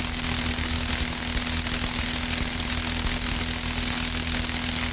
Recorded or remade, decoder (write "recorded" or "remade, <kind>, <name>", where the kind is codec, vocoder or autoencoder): recorded